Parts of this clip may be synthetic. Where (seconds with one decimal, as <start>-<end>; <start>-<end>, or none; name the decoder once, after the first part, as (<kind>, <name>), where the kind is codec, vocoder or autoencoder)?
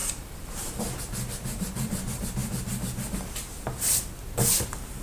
0.0-0.8 (vocoder, BigVGAN v2)